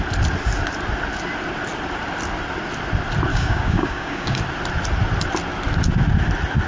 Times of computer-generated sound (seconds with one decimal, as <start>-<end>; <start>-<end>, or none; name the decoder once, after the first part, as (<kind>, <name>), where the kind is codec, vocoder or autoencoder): 3.3-4.4 (codec, DAC)

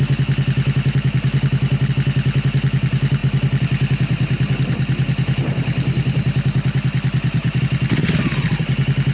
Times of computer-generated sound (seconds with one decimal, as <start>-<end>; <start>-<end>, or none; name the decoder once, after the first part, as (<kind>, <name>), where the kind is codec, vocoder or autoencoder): none

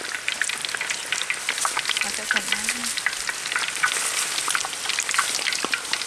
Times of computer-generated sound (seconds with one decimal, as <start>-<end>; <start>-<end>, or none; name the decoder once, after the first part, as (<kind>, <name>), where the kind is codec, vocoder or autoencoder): none

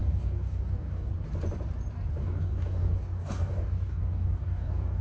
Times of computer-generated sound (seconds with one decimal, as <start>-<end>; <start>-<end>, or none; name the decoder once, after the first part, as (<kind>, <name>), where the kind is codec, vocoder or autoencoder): 0.0-1.1 (codec, DAC); 2.2-5.0

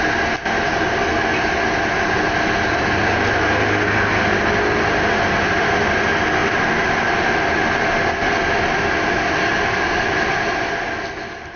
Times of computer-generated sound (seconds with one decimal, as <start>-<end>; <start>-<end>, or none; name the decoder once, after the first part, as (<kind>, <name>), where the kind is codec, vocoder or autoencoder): none

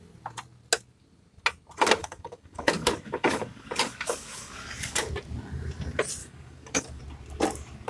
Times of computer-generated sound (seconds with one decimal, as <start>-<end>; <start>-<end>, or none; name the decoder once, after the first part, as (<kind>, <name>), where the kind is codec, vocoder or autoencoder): 2.0-5.1 (codec, DAC); 6.2-7.0

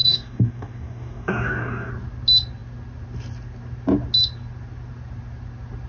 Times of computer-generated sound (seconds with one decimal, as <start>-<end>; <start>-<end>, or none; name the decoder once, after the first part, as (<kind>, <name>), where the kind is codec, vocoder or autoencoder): 0.0-1.9 (codec, DAC)